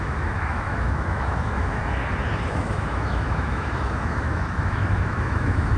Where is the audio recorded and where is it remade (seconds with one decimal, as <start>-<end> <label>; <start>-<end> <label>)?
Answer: 0.0-1.8 remade; 1.8-2.5 recorded; 2.5-5.8 remade